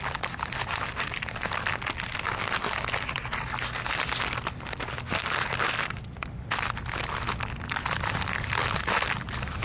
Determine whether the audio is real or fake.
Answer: real